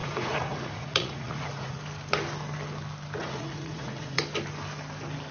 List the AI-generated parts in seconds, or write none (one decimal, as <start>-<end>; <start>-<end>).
0.0-1.8; 3.2-4.2